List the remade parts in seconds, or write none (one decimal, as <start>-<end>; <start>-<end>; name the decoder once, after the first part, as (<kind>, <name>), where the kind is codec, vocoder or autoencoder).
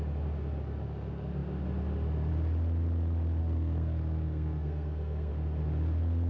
3.4-5.3 (codec, SNAC)